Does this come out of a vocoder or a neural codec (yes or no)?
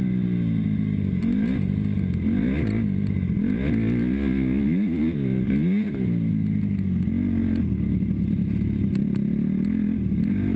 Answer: no